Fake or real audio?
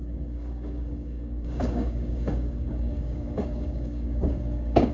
fake